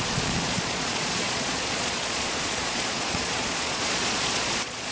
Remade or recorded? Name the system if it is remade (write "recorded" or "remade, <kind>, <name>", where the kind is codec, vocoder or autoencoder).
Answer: remade, vocoder, Vocos